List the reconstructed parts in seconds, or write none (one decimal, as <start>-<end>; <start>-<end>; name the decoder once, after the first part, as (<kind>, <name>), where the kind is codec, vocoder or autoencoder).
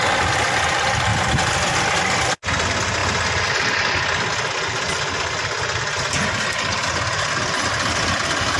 none